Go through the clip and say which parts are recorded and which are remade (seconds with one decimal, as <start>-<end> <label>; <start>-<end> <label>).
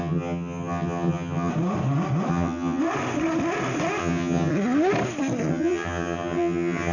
0.0-1.5 remade; 1.5-2.3 recorded; 2.3-2.8 remade; 2.8-4.0 recorded; 4.0-4.5 remade; 4.5-5.5 recorded; 5.5-6.9 remade